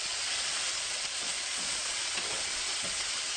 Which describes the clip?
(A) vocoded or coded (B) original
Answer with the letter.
A